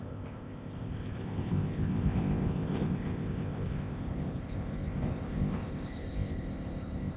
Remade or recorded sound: remade